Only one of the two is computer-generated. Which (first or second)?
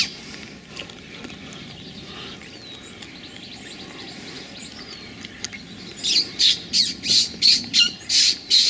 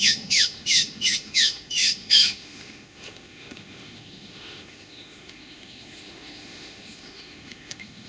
second